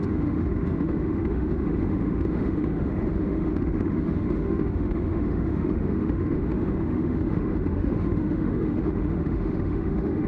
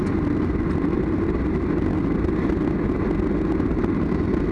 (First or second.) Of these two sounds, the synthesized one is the first